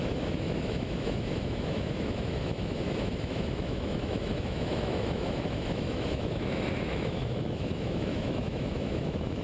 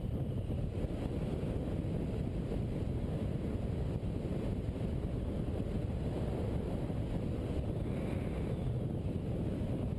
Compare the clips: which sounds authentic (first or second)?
second